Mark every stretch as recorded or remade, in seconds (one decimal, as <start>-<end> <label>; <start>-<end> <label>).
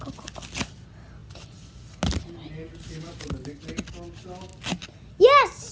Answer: 0.0-5.7 recorded